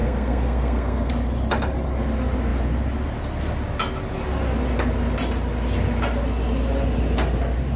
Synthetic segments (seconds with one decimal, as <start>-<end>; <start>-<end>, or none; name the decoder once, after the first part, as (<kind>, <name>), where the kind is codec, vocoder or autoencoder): 0.0-1.1 (codec, SNAC)